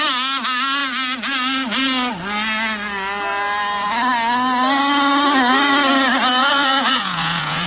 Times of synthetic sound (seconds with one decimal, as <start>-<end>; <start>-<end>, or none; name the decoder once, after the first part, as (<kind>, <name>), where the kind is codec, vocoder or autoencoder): 6.4-7.7 (vocoder, Vocos)